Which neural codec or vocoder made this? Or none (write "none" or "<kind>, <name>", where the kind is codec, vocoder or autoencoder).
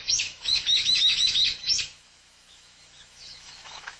autoencoder, DAC-VAE